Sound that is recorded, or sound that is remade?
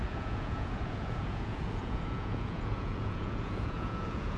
remade